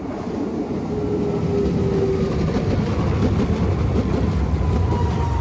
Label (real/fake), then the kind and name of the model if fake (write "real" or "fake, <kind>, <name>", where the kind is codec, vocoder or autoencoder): real